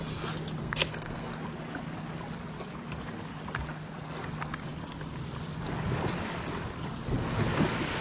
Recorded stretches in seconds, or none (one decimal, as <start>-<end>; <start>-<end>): 0.0-0.6; 1.3-8.0